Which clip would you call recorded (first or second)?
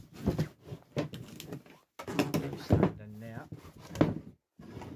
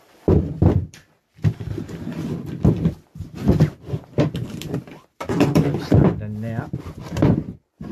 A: first